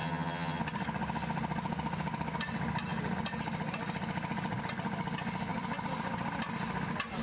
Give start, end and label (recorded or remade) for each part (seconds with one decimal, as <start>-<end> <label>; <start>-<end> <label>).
0.0-0.6 remade; 0.6-7.2 recorded

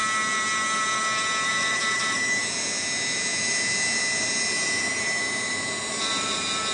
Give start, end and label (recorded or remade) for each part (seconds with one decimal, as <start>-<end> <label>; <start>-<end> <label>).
0.0-1.5 recorded; 1.5-6.7 remade

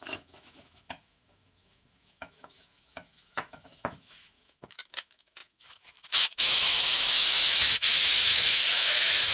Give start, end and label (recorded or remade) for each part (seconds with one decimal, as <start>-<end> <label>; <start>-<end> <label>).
0.0-9.3 remade

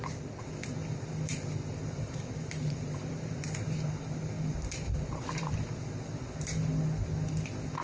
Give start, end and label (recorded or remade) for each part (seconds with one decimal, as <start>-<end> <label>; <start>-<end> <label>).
0.0-0.8 recorded; 0.8-5.5 remade; 5.5-7.8 recorded

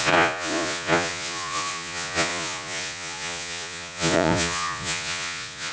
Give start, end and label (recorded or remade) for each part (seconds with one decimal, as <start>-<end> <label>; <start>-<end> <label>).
0.0-5.7 remade

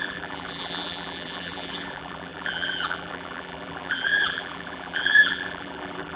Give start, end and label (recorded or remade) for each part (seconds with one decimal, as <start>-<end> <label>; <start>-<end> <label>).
0.0-6.2 remade

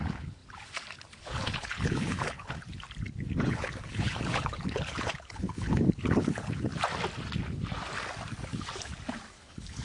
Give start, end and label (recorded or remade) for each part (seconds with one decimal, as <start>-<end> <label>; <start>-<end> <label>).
0.0-0.4 remade; 0.4-1.2 recorded; 1.2-2.6 remade; 2.6-3.2 recorded; 3.2-6.7 remade; 6.7-9.3 recorded; 9.3-9.8 remade